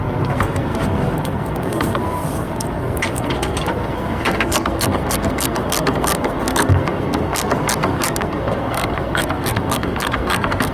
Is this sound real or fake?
fake